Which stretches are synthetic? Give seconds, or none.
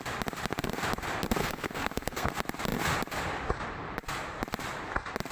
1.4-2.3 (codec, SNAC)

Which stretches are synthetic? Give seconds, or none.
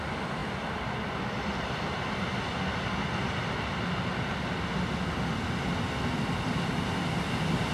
none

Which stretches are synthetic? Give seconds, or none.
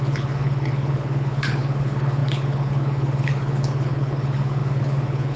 0.0-5.4 (codec, HILCodec)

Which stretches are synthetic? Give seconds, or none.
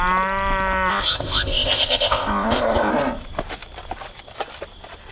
0.9-2.9 (codec, ZipCodec)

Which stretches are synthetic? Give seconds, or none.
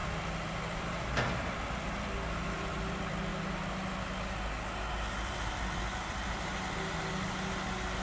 0.0-3.3 (vocoder, BigVGAN v2); 4.9-6.5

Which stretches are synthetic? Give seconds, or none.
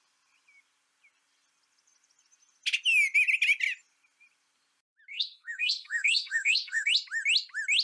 5.1-6.9 (codec, SNAC)